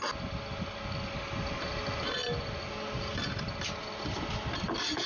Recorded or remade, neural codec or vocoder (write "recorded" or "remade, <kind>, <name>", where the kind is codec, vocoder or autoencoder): recorded